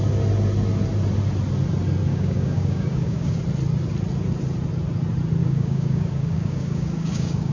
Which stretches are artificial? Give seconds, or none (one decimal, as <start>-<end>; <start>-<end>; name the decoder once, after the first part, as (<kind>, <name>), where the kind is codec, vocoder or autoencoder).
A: 2.1-3.4 (codec, DAC); 5.4-7.5